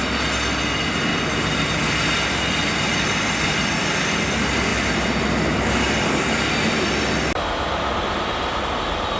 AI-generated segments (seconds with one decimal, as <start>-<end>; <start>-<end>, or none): none